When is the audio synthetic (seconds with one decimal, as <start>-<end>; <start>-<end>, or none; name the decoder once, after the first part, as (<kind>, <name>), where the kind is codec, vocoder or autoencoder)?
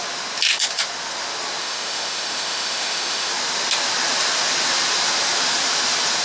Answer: 1.6-3.3 (autoencoder, DAC-VAE)